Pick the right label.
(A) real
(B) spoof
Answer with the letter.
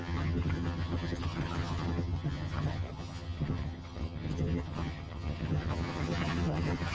B